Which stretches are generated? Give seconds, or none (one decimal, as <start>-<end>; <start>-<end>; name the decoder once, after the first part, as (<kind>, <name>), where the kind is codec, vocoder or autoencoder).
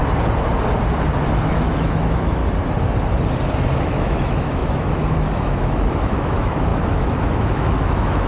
1.2-2.4 (autoencoder, DAC-VAE); 3.8-8.3